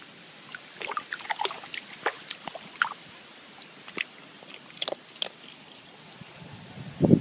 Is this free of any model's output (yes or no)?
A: yes